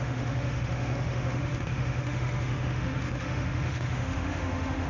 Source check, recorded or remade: remade